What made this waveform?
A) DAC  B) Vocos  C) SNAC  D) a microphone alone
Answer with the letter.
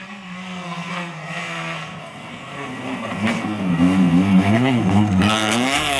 C